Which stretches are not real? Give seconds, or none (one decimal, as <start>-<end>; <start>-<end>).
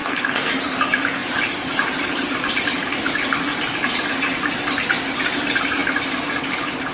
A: 0.0-0.5